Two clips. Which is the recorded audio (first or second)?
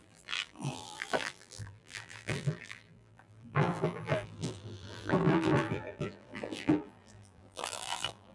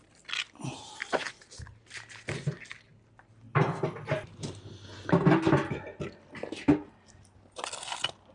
second